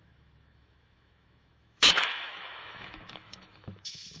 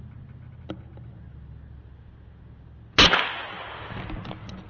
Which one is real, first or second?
second